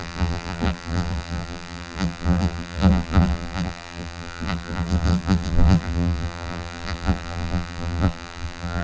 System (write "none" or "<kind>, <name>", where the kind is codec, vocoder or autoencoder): vocoder, BigVGAN v2